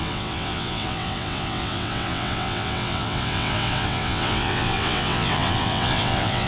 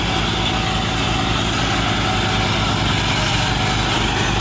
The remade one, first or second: first